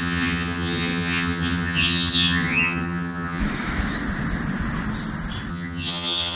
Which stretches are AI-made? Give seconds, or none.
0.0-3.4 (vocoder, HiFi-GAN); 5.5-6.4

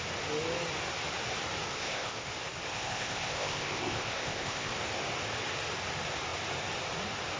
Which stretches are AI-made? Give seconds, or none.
1.7-2.3 (codec, ZipCodec); 2.7-4.7